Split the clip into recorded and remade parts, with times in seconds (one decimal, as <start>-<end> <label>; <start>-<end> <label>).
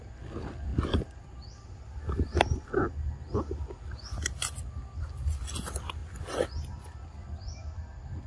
0.0-8.3 recorded